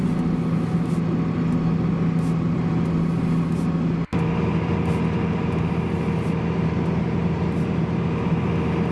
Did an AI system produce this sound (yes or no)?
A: no